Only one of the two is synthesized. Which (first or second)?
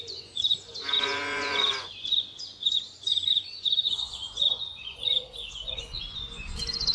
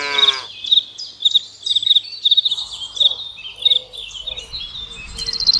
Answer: first